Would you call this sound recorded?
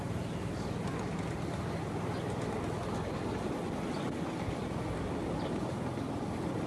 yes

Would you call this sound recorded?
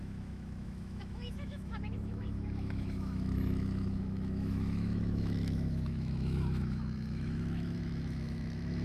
no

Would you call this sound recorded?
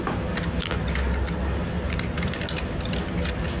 yes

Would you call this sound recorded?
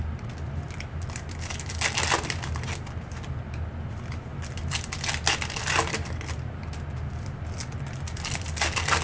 yes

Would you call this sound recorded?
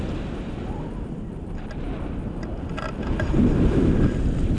yes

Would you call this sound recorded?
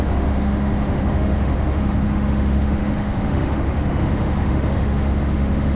no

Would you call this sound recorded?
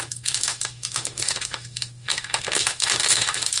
no